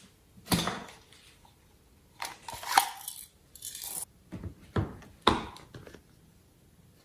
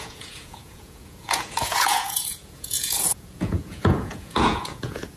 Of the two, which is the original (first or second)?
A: first